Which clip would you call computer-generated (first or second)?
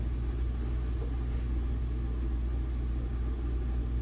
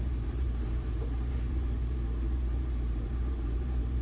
second